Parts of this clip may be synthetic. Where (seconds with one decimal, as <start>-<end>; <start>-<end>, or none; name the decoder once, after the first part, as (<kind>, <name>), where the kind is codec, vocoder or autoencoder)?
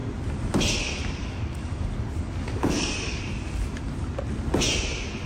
1.2-3.2 (codec, DAC)